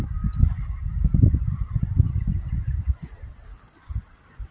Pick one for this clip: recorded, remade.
recorded